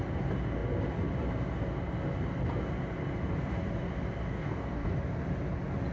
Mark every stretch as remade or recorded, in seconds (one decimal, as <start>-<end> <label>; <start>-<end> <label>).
0.0-4.3 recorded; 4.3-4.9 remade; 4.9-5.9 recorded

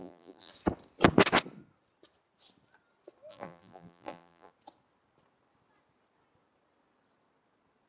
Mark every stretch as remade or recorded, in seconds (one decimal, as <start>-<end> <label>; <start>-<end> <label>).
0.0-0.5 remade; 0.5-3.3 recorded; 3.3-4.5 remade; 4.5-7.9 recorded

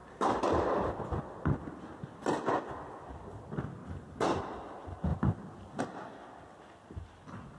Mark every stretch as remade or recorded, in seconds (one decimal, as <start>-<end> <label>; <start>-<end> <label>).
0.0-1.0 remade; 1.0-3.8 recorded; 3.8-4.4 remade; 4.4-7.6 recorded

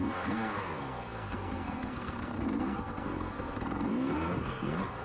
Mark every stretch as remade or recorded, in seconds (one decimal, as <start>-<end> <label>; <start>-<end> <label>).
0.0-5.0 remade

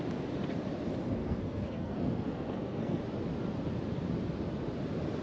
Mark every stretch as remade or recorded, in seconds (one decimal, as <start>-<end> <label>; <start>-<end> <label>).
0.0-1.2 recorded; 1.2-3.0 remade; 3.0-5.2 recorded

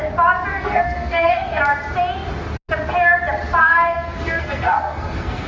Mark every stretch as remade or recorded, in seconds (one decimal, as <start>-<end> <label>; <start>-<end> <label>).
0.0-0.5 recorded; 0.5-1.6 remade; 1.6-3.6 recorded; 3.6-5.5 remade